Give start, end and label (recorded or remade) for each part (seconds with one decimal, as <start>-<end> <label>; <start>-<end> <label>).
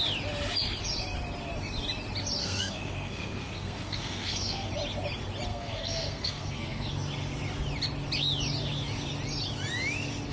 0.0-2.4 recorded; 2.4-4.7 remade; 4.7-5.5 recorded; 5.5-6.9 remade; 6.9-10.3 recorded